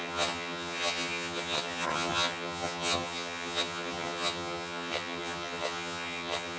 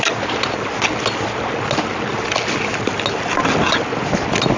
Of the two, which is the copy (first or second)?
first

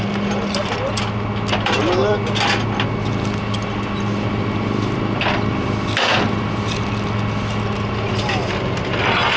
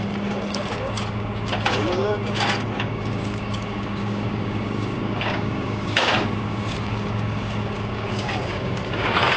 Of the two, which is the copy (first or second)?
second